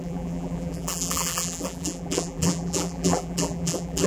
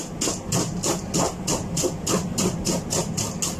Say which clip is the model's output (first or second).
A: first